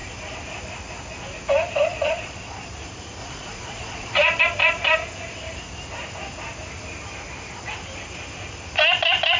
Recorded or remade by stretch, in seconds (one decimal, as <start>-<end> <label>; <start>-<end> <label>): 0.0-1.9 recorded; 1.9-2.7 remade; 2.7-3.2 recorded; 3.2-4.4 remade; 4.4-9.4 recorded